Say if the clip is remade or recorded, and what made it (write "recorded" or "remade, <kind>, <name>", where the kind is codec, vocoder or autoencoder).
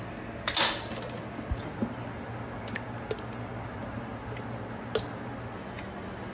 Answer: recorded